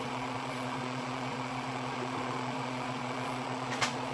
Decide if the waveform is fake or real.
fake